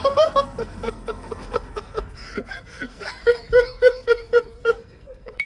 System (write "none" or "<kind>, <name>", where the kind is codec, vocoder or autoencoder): codec, SNAC